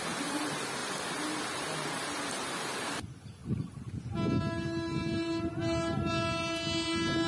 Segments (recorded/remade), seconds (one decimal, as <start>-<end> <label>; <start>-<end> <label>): 0.0-7.3 recorded